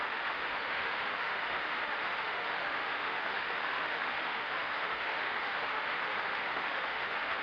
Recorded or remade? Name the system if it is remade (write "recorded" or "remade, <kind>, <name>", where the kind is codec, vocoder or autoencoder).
remade, autoencoder, DAC-VAE